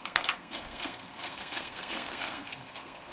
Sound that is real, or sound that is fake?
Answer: fake